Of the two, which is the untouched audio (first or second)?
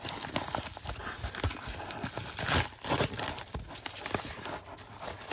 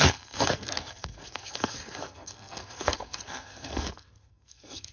first